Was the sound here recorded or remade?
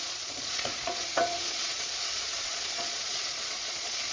remade